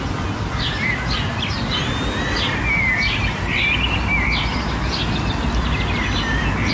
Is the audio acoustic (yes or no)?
yes